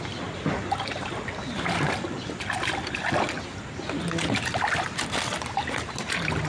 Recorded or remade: recorded